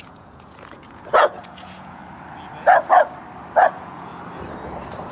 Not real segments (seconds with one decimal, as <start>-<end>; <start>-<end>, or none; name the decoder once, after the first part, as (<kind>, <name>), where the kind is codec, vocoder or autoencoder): 0.0-2.0 (vocoder, Vocos); 3.6-4.1

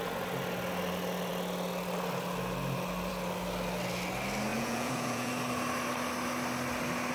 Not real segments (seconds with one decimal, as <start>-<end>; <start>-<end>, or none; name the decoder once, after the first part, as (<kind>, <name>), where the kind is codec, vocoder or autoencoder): 4.5-5.3 (vocoder, Vocos)

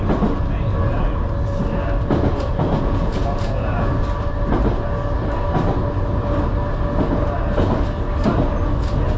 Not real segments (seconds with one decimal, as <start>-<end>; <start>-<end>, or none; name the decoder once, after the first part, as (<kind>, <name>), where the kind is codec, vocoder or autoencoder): 2.5-3.9 (vocoder, Vocos)

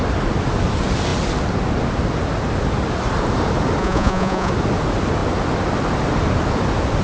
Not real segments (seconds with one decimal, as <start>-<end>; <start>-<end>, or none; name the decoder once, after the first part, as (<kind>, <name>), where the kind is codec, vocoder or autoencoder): 3.8-4.5 (vocoder, Vocos)

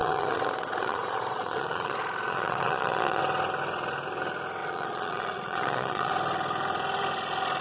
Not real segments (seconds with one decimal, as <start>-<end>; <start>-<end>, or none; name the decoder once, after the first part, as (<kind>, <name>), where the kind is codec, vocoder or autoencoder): 0.0-3.2 (vocoder, Vocos); 4.6-6.1

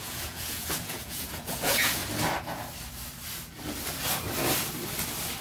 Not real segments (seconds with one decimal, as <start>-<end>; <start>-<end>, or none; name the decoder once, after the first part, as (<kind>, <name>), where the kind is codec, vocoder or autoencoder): 0.0-2.0 (vocoder, Vocos)